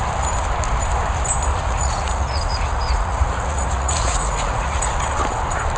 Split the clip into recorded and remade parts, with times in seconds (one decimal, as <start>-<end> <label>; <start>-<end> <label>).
0.0-1.5 recorded; 1.5-4.9 remade; 4.9-5.8 recorded